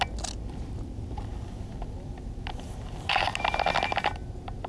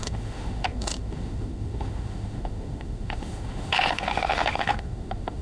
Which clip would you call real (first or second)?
first